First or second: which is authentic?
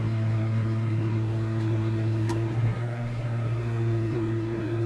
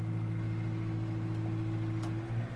second